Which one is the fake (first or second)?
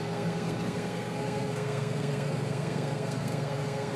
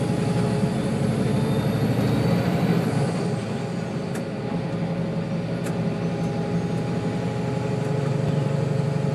first